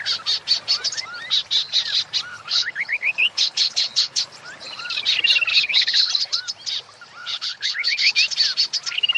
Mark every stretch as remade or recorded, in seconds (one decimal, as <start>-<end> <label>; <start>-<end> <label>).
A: 0.0-2.3 recorded; 2.3-4.2 remade; 4.2-5.5 recorded; 5.5-6.1 remade; 6.1-7.2 recorded; 7.2-8.1 remade; 8.1-9.2 recorded